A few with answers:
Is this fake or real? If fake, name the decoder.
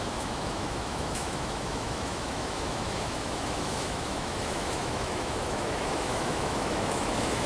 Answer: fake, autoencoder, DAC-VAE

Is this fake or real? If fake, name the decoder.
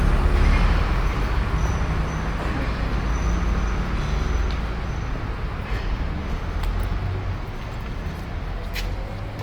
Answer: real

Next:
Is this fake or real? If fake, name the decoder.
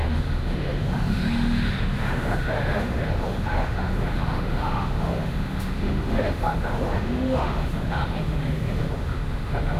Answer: fake, autoencoder, DAC-VAE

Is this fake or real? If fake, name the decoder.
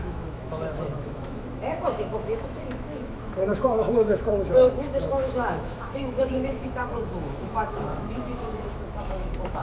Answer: fake, autoencoder, DAC-VAE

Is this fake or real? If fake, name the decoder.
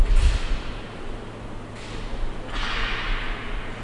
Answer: real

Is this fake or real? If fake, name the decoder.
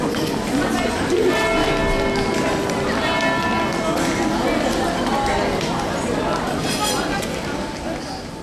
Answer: real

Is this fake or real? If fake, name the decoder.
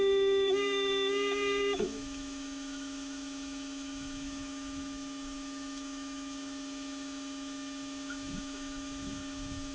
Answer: fake, autoencoder, DAC-VAE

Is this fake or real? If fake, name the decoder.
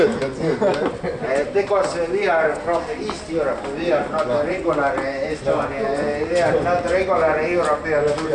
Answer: real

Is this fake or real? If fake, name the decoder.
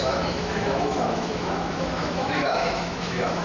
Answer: fake, autoencoder, DAC-VAE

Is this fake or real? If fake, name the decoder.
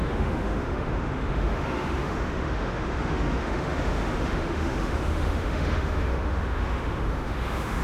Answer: fake, autoencoder, DAC-VAE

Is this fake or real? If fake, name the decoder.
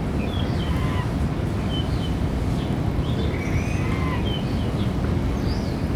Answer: real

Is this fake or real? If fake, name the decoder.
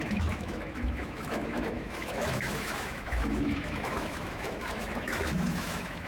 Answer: fake, autoencoder, DAC-VAE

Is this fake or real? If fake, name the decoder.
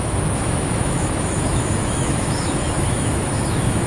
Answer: fake, autoencoder, DAC-VAE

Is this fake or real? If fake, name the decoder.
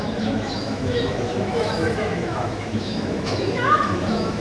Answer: fake, autoencoder, DAC-VAE